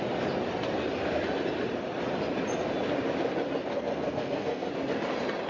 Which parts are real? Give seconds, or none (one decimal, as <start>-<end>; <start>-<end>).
0.0-3.7; 4.7-5.5